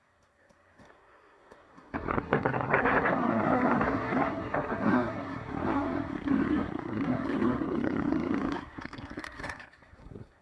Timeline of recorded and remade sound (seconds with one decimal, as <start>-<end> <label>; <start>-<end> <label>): 0.0-10.4 remade